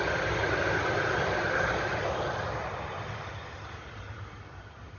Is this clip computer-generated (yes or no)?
no